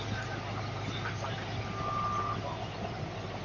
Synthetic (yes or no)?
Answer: no